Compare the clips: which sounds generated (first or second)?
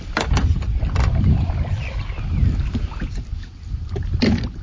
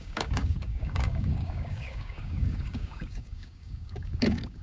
second